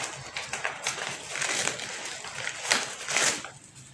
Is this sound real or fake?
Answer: real